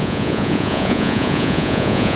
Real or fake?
fake